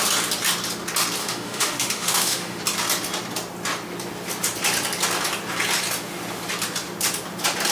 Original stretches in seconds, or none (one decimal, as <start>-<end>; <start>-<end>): 0.0-1.2; 2.6-7.7